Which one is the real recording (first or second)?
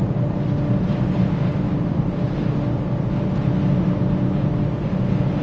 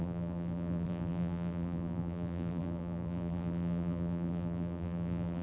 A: first